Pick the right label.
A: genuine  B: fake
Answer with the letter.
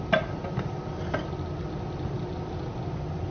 A